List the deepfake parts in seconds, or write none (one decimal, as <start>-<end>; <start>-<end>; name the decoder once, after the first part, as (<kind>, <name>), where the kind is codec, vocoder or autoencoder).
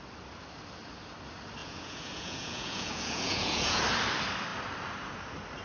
1.6-3.8 (vocoder, Vocos)